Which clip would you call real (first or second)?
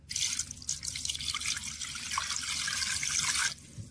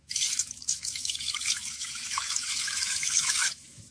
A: first